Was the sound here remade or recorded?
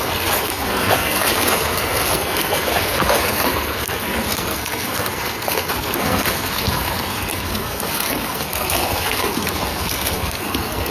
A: remade